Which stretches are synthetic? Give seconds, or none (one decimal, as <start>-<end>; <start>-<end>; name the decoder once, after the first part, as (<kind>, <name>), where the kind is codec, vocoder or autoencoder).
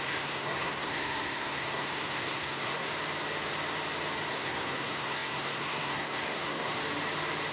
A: 0.0-2.9 (codec, SNAC); 4.3-6.8